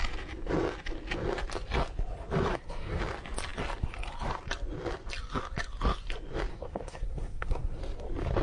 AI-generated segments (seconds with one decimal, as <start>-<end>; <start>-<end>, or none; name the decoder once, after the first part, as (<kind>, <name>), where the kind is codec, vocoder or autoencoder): 2.5-3.0 (codec, SNAC); 6.5-7.8